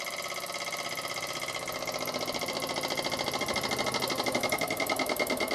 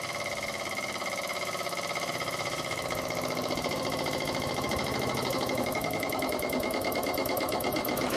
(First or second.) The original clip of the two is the first